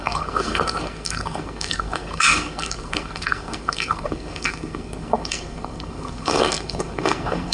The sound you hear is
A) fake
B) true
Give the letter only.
A